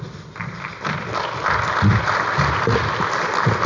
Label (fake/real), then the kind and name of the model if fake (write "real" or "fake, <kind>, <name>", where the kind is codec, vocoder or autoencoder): real